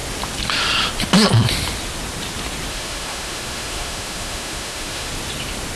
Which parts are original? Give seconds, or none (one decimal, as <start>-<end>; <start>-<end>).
0.0-2.7; 5.1-5.8